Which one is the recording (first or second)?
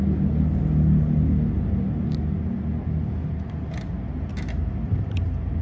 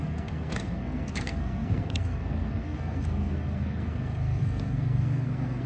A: first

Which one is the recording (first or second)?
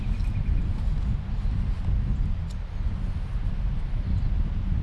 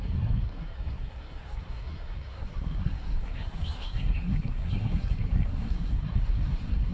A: first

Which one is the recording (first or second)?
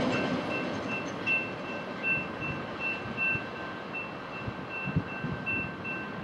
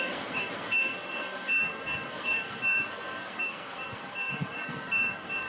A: first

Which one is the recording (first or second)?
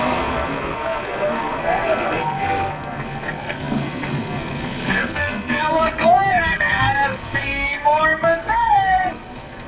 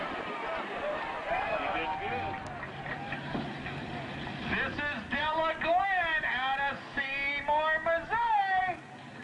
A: second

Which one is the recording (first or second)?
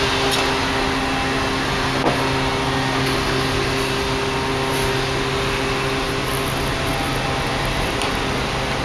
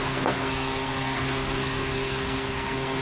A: first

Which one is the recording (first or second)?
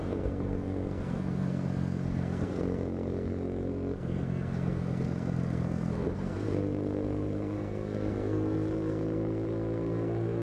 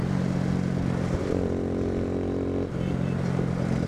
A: second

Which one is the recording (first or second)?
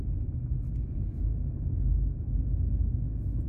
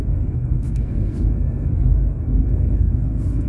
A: first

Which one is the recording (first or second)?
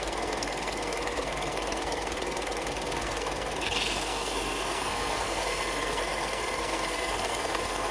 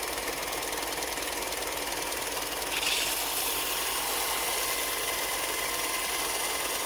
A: second